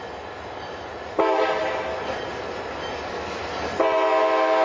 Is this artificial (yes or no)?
no